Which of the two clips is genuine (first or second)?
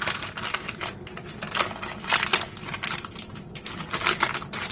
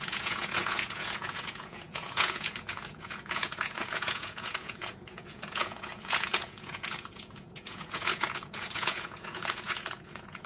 first